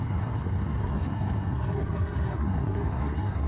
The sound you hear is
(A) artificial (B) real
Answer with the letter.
A